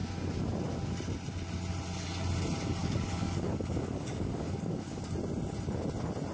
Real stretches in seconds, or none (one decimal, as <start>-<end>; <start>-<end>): 0.0-2.8; 5.0-6.3